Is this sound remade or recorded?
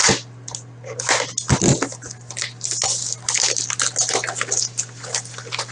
recorded